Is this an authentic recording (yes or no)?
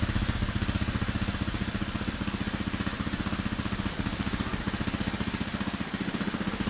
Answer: yes